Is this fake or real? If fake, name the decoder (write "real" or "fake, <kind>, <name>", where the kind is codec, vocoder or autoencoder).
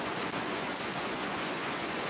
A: fake, vocoder, Vocos